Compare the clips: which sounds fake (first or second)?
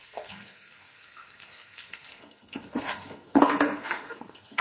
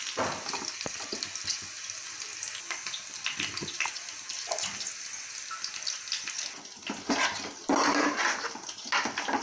first